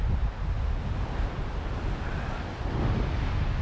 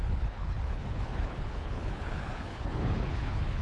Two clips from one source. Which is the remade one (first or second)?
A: second